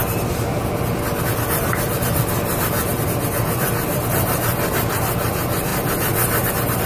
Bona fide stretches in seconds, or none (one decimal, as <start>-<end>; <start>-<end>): none